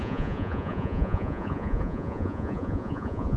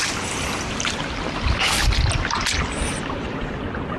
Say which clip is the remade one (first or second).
first